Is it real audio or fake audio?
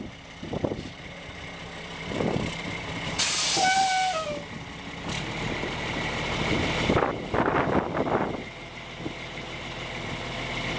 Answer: real